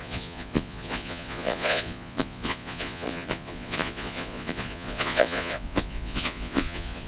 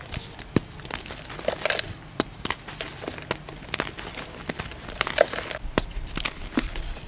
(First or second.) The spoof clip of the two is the first